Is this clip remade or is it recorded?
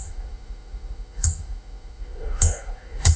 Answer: remade